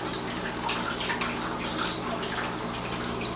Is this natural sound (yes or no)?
yes